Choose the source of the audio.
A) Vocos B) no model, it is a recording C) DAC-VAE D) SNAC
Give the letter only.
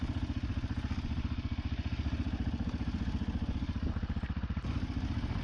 B